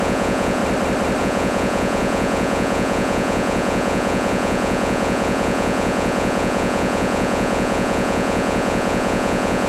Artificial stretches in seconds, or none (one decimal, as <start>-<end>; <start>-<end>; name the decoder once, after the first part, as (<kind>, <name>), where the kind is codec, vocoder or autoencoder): 0.0-0.6 (vocoder, Vocos); 1.2-9.7